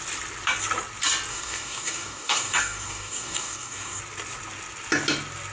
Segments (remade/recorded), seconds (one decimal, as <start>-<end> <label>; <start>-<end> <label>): 0.0-1.3 recorded; 1.3-4.0 remade; 4.0-5.5 recorded